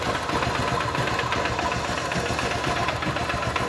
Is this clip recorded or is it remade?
recorded